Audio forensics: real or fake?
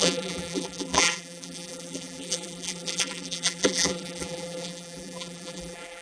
fake